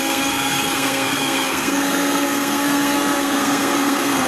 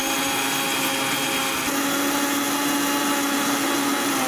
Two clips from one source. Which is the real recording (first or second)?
second